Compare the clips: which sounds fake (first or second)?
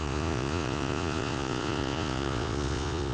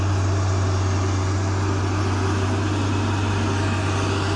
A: first